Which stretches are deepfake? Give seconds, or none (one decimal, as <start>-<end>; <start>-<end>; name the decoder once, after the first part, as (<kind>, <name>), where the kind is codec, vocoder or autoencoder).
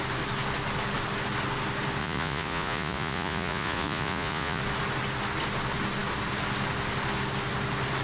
2.0-4.6 (vocoder, Vocos)